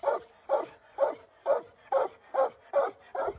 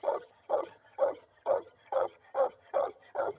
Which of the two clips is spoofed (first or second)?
second